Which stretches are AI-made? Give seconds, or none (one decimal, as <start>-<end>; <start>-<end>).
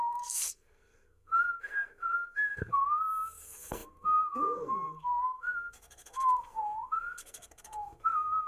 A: 0.0-8.5